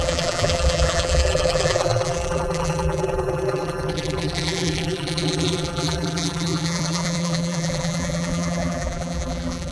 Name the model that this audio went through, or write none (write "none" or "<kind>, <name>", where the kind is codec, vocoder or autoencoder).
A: vocoder, BigVGAN v2